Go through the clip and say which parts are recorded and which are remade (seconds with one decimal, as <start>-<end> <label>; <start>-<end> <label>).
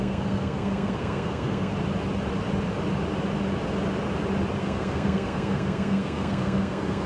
0.0-1.7 remade; 1.7-4.6 recorded; 4.6-7.1 remade